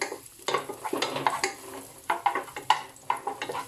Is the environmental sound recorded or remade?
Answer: recorded